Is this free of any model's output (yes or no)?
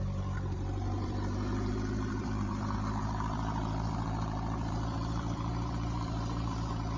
no